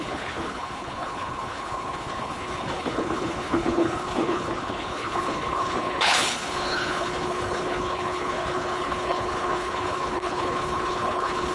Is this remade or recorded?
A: remade